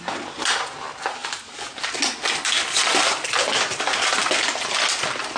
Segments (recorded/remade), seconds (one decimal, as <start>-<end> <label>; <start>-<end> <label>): 0.0-5.4 recorded